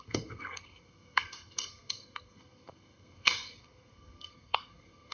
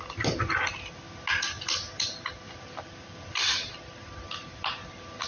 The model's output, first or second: first